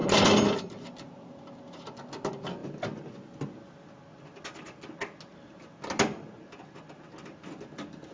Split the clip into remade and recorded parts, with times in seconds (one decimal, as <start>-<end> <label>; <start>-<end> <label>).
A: 0.0-8.1 recorded